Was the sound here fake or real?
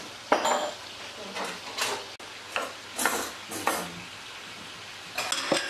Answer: real